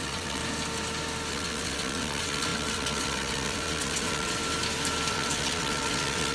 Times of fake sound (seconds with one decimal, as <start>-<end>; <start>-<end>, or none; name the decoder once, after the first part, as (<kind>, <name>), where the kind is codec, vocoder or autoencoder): 0.0-0.4 (vocoder, WaveNeXt); 1.3-4.4; 5.1-6.3